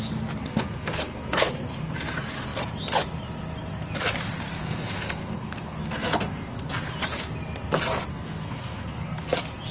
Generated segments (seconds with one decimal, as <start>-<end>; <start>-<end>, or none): 0.5-1.9; 4.6-6.7; 8.1-9.2